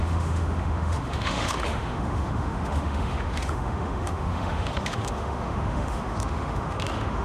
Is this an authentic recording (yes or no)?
no